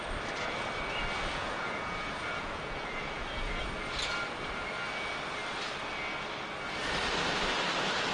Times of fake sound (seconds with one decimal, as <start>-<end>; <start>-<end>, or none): 1.3-3.6